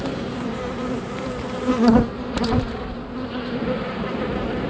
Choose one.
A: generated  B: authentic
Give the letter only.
A